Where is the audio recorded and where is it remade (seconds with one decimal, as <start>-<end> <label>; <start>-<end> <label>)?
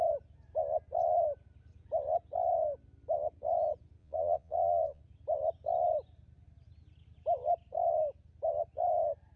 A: 0.0-4.0 recorded; 4.0-5.0 remade; 5.0-9.4 recorded